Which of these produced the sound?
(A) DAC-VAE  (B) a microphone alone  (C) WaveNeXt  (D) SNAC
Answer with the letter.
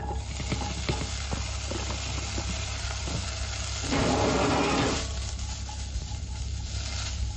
B